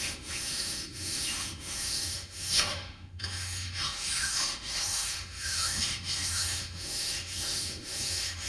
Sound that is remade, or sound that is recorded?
remade